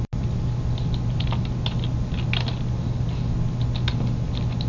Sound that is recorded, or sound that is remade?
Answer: recorded